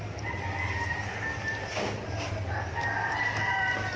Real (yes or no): yes